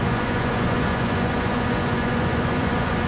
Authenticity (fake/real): fake